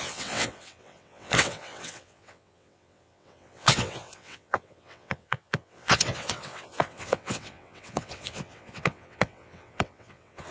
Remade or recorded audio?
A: remade